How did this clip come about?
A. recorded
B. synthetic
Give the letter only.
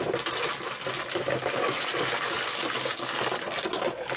A